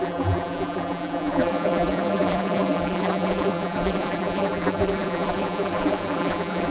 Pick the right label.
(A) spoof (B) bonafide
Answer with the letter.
A